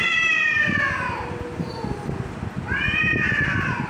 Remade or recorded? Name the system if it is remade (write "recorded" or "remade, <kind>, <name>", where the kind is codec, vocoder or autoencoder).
recorded